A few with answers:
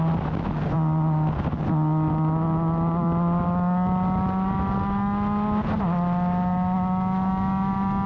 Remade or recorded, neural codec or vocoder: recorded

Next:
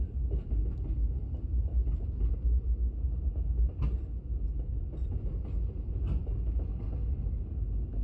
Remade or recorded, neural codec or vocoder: recorded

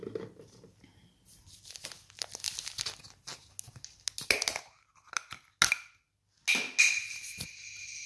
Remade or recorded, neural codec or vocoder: recorded